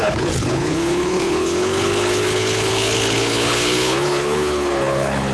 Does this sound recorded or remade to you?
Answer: remade